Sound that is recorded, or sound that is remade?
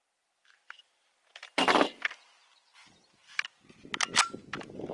recorded